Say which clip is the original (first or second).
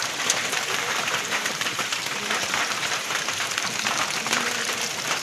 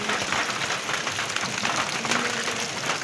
second